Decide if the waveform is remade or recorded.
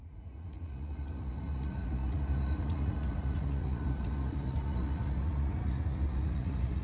remade